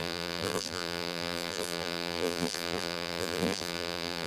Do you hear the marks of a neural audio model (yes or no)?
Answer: yes